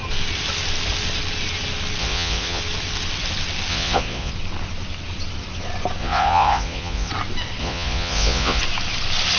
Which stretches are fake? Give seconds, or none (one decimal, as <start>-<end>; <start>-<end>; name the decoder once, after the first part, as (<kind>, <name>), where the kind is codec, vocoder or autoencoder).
2.0-2.6 (vocoder, Vocos); 3.7-4.3; 6.0-7.1; 7.6-8.6